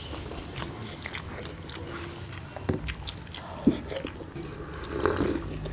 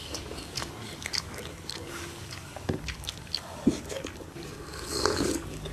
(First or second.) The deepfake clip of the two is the second